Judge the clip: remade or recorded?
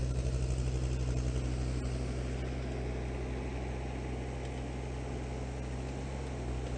recorded